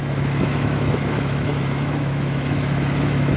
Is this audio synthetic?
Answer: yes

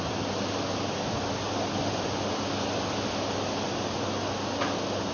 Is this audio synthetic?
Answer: no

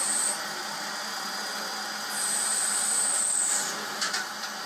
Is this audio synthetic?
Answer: no